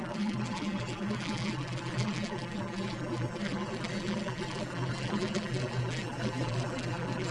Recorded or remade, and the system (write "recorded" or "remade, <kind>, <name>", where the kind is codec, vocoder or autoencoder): remade, vocoder, BigVGAN v2